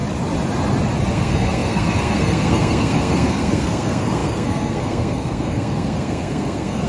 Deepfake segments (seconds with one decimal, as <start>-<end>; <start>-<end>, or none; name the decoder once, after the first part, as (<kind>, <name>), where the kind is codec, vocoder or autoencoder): 1.1-6.9 (codec, SNAC)